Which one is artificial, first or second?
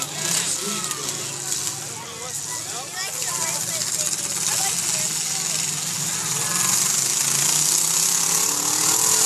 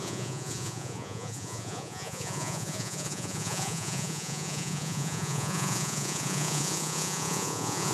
second